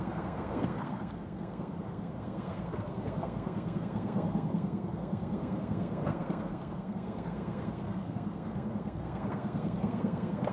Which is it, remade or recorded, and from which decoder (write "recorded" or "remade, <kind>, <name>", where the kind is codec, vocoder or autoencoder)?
remade, codec, SNAC